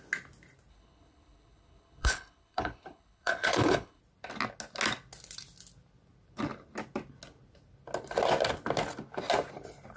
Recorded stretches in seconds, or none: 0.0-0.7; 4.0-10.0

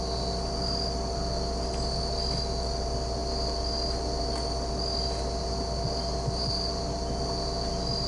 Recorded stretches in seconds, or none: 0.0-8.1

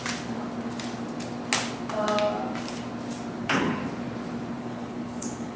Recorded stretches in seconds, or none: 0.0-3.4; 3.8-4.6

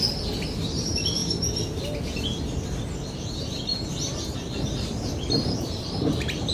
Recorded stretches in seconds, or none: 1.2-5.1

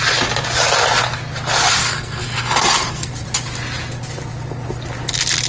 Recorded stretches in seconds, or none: 0.0-1.8; 3.1-5.5

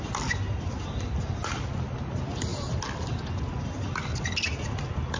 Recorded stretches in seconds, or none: 0.0-5.2

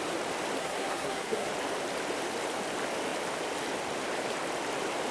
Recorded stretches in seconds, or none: 0.0-0.6; 1.5-5.1